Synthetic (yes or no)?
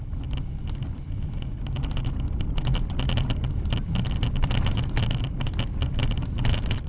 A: no